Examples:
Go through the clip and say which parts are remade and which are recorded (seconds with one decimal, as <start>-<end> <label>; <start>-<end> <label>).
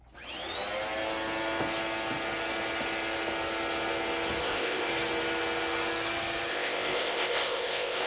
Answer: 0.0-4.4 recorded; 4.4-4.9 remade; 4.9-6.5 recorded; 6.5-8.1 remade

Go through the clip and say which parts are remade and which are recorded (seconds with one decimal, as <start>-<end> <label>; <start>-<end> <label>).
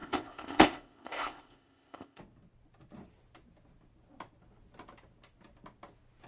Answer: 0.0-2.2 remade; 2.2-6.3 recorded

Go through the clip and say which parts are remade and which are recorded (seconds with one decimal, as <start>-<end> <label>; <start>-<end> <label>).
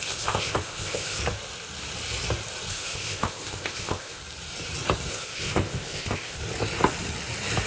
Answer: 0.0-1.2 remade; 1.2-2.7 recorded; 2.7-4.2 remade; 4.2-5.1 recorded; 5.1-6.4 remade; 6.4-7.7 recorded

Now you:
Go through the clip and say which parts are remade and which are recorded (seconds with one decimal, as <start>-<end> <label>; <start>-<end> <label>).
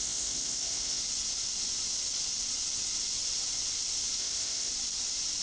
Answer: 0.0-1.0 remade; 1.0-4.2 recorded; 4.2-4.7 remade; 4.7-5.4 recorded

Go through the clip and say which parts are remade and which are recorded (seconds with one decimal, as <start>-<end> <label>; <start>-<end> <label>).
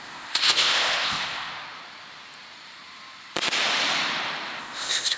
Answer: 0.0-1.5 remade; 1.5-4.6 recorded; 4.6-5.2 remade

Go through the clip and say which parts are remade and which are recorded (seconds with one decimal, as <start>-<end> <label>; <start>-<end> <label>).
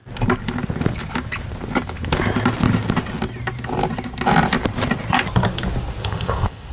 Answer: 0.0-6.0 recorded; 6.0-6.7 remade